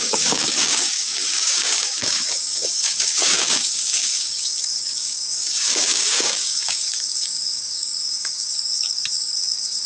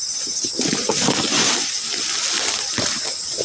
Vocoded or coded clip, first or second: first